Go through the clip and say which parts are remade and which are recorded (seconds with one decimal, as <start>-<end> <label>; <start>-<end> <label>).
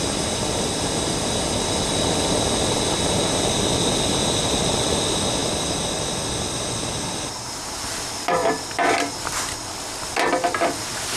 0.0-11.2 recorded